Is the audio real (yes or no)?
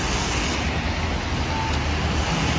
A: yes